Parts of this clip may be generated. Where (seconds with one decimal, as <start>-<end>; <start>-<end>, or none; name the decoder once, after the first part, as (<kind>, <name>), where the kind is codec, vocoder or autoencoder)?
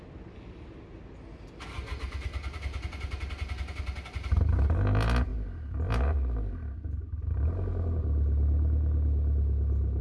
none